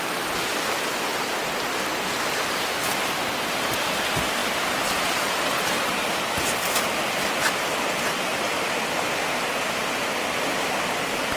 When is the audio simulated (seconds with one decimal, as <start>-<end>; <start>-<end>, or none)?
8.3-9.5